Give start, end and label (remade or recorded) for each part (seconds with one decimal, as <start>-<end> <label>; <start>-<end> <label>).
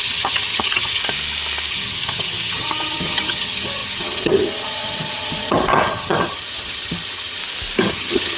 0.0-1.0 remade; 1.0-1.7 recorded; 1.7-7.4 remade; 7.4-7.9 recorded; 7.9-8.4 remade